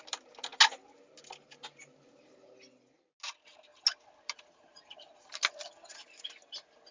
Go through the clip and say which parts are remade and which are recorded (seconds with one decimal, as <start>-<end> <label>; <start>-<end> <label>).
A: 0.0-6.9 recorded